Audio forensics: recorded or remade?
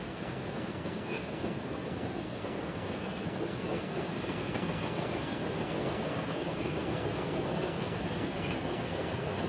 remade